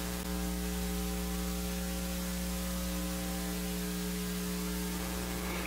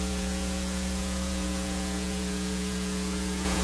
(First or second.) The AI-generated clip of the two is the second